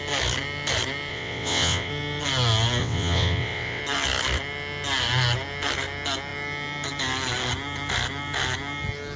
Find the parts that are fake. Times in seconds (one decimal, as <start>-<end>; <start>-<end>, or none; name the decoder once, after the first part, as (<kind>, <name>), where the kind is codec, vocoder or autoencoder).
1.1-1.9 (vocoder, WaveNeXt); 2.8-3.8